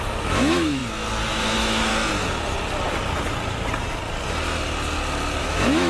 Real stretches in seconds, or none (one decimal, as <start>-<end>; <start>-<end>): 0.8-1.3; 1.9-5.4